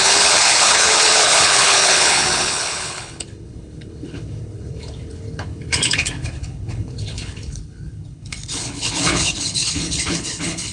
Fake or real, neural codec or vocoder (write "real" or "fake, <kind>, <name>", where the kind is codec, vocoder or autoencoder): fake, codec, HILCodec